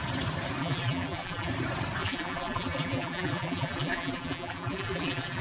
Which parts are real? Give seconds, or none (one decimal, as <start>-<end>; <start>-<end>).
0.0-0.6; 1.5-2.0